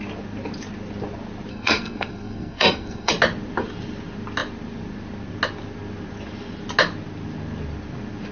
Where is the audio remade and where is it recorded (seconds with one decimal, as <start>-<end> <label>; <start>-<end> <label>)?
0.0-1.5 recorded; 1.5-3.1 remade; 3.1-8.3 recorded